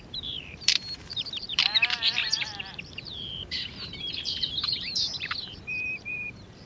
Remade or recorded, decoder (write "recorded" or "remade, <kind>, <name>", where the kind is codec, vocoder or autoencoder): remade, vocoder, BigVGAN v2